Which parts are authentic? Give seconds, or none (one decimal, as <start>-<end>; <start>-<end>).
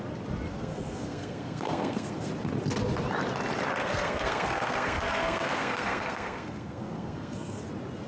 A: 0.0-0.5; 2.3-3.8; 7.6-8.1